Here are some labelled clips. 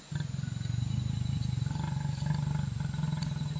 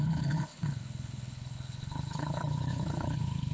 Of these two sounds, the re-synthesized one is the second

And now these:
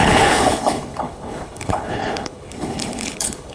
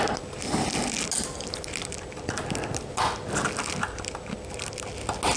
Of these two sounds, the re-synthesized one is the first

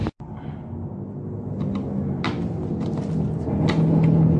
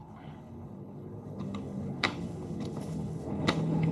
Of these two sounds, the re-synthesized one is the second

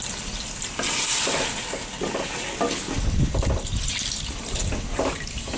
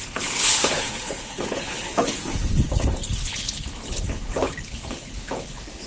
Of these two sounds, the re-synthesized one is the second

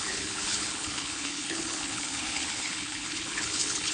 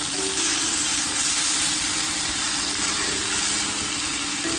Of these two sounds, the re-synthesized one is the first